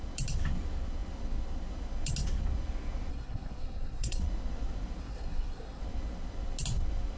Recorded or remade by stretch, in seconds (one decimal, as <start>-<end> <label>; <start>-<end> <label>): 0.0-3.1 recorded; 3.1-4.2 remade; 4.2-5.0 recorded; 5.0-5.8 remade; 5.8-7.2 recorded